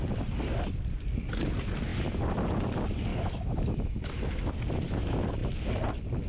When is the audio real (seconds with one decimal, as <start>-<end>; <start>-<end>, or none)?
0.0-3.1; 4.5-6.3